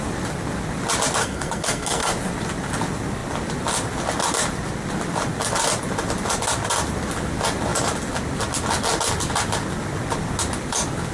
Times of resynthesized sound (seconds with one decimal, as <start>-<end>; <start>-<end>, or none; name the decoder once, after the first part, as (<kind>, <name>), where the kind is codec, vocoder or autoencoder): 1.2-2.1 (codec, SNAC)